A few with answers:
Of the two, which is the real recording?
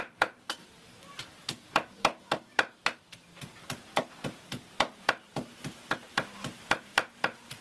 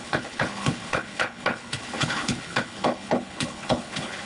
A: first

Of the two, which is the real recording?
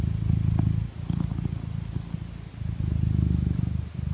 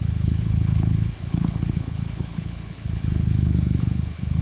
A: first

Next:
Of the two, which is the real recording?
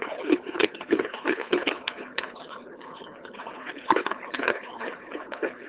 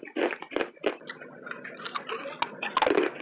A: second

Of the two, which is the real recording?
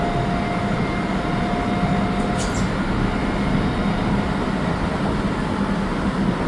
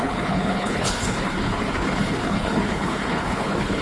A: first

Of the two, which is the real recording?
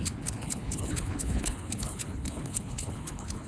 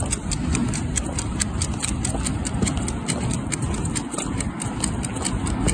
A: second